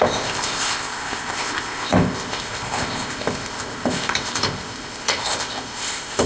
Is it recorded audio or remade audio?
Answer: remade